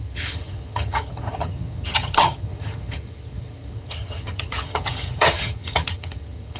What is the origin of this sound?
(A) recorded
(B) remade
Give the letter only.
B